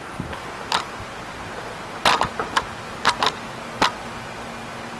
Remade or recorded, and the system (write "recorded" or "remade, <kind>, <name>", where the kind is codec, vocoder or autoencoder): recorded